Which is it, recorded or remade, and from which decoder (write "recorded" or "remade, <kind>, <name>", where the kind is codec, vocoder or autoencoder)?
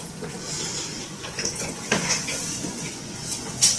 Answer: remade, vocoder, Vocos